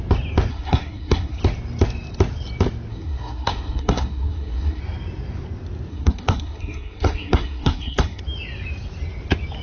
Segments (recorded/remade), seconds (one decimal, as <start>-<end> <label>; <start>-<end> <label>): 0.0-0.5 recorded; 0.5-1.4 remade; 1.4-2.9 recorded; 2.9-4.8 remade; 4.8-5.9 recorded; 5.9-8.2 remade; 8.2-9.6 recorded